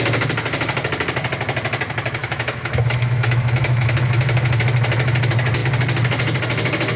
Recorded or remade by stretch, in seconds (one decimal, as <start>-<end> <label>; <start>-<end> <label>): 0.0-2.2 recorded; 2.2-4.6 remade; 4.6-7.0 recorded